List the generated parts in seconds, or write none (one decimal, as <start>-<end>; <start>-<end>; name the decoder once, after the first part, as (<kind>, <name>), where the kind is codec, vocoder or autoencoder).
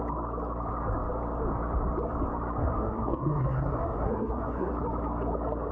2.6-4.7 (codec, SNAC)